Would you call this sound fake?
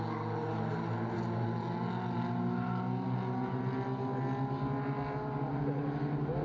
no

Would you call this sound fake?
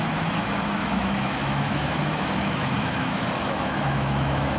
yes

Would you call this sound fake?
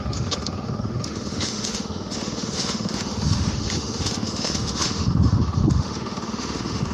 yes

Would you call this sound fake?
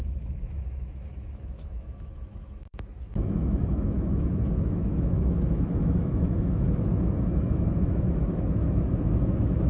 yes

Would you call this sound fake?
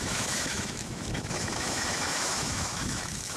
yes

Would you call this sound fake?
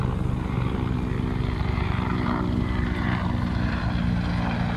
no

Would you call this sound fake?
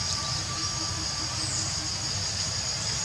no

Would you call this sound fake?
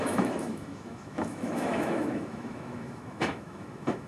yes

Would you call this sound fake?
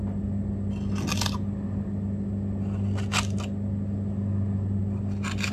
no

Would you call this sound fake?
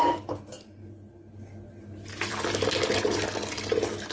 no